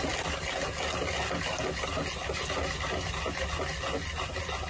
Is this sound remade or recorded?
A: recorded